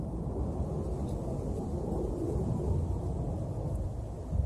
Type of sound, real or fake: real